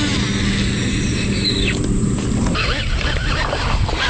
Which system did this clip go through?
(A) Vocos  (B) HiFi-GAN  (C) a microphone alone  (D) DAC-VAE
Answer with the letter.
C